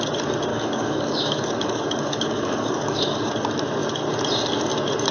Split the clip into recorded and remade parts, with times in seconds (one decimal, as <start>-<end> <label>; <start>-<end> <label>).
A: 0.0-0.5 recorded; 0.5-3.3 remade; 3.3-5.1 recorded